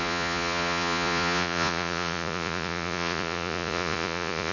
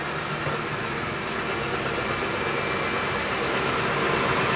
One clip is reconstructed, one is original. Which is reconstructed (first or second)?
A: first